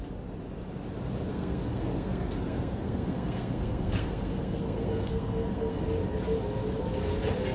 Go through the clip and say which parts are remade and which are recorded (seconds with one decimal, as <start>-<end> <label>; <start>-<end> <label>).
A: 0.0-1.3 recorded; 1.3-5.8 remade; 5.8-7.5 recorded

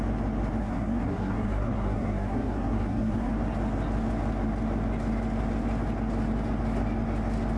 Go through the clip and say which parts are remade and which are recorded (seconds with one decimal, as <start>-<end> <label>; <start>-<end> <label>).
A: 0.0-0.6 recorded; 0.6-3.3 remade; 3.3-7.6 recorded

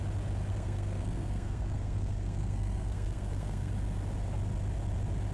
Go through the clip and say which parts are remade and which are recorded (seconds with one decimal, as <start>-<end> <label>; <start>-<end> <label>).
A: 0.0-0.5 recorded; 0.5-3.7 remade; 3.7-5.3 recorded

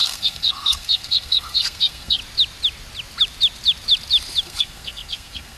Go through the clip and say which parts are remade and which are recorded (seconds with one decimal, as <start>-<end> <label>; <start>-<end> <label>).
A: 0.0-2.2 remade; 2.2-4.4 recorded; 4.4-5.6 remade